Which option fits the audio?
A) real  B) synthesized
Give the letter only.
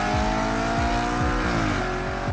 A